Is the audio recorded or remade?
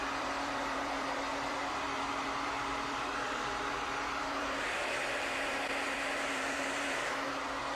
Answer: remade